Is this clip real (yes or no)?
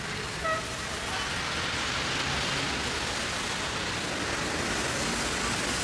yes